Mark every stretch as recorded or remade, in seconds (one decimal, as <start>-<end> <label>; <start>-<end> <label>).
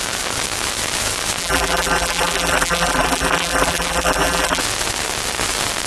0.0-1.4 recorded; 1.4-4.6 remade; 4.6-5.9 recorded